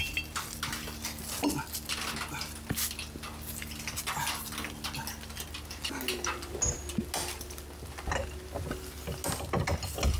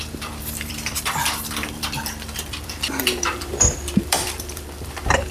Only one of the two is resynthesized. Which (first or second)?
second